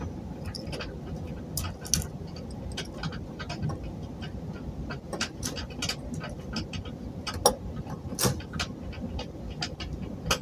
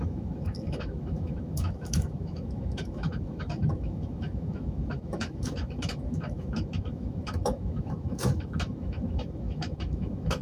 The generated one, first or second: second